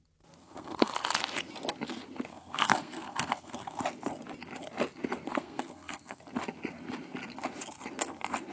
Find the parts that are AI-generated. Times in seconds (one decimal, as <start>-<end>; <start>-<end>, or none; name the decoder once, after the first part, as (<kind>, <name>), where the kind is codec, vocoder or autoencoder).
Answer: 0.4-0.9 (codec, SNAC); 2.3-3.8; 5.3-6.2